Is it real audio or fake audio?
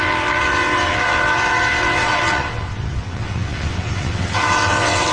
fake